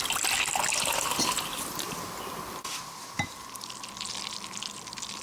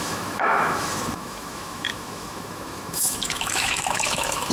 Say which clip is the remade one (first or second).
second